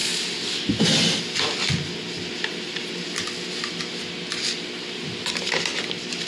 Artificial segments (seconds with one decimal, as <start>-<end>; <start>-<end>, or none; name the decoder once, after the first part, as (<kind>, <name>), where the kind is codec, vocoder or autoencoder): 5.7-6.3 (vocoder, BigVGAN v2)